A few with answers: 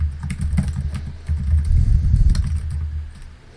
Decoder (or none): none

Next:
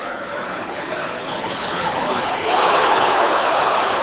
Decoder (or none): codec, HILCodec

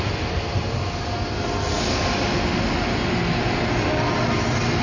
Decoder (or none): none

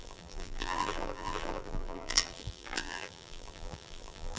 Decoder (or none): vocoder, BigVGAN v2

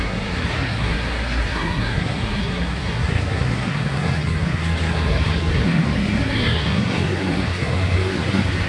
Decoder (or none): codec, SNAC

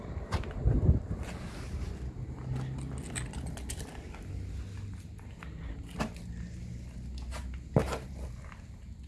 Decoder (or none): none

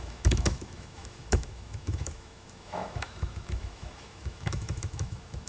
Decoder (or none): autoencoder, DAC-VAE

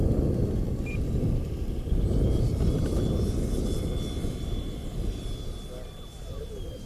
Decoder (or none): none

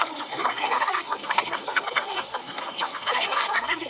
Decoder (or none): codec, SNAC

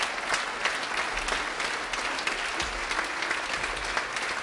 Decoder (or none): none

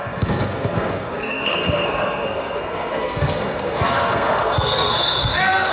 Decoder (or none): codec, SNAC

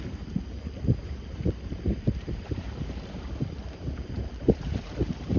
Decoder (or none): vocoder, BigVGAN v2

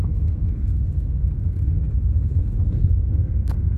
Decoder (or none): codec, SNAC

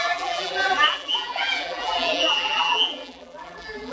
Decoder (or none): vocoder, BigVGAN v2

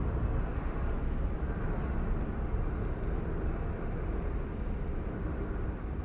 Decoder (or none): none